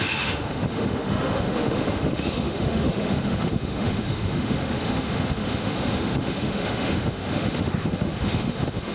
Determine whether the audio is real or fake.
fake